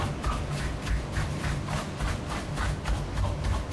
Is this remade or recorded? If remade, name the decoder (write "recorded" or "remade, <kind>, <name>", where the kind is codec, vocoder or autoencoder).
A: recorded